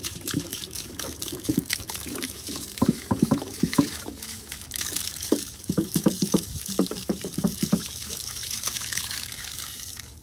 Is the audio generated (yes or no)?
yes